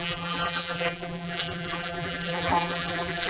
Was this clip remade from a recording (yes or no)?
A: yes